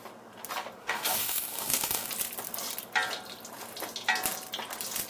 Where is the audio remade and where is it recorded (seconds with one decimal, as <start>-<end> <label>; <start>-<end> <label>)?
0.0-0.8 recorded; 0.8-2.1 remade; 2.1-5.1 recorded